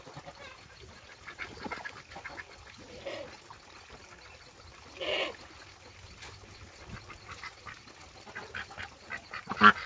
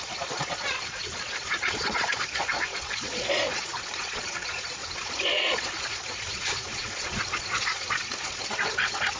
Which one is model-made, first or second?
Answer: second